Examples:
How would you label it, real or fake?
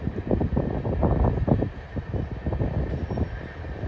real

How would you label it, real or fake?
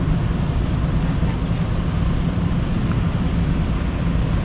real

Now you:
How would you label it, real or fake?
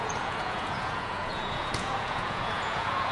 fake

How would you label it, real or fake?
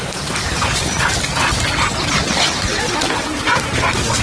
real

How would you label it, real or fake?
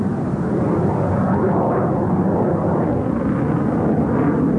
real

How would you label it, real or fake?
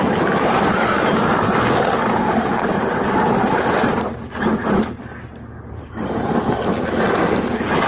real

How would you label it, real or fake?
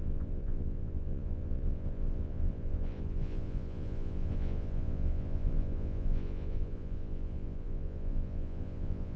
fake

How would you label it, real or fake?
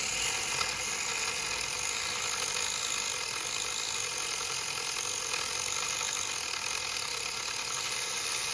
real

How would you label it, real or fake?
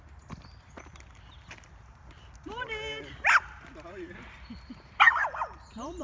real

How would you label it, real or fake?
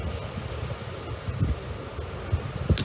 real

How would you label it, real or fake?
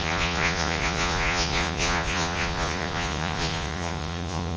fake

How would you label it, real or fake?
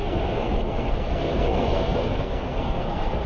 fake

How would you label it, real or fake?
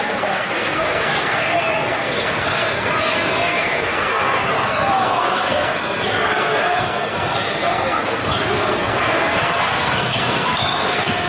fake